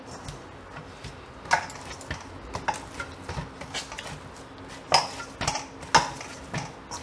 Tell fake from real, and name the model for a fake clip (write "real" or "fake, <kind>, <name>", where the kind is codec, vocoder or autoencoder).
real